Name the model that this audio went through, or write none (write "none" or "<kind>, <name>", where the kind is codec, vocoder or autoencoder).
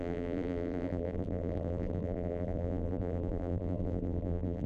vocoder, BigVGAN v2